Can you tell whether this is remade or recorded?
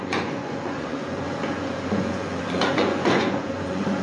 remade